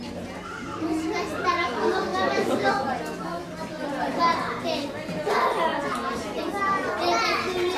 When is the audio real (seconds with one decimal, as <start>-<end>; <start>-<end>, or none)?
0.0-2.1; 2.7-7.8